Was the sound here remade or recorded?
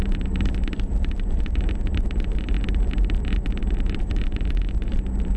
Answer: remade